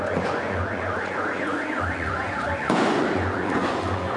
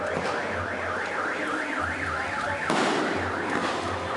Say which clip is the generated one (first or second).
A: first